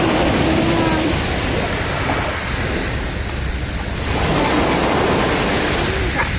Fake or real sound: real